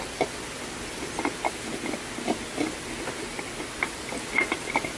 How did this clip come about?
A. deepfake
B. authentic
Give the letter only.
B